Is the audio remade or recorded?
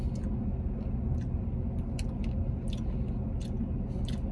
recorded